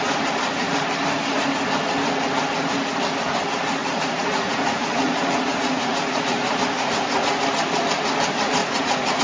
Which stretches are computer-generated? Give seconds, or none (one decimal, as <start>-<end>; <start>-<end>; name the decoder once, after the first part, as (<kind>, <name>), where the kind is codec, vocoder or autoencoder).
3.8-7.4 (vocoder, Vocos); 8.6-9.2